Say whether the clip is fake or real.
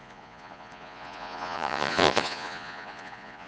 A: fake